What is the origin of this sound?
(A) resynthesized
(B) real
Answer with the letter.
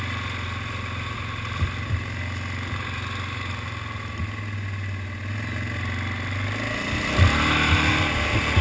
B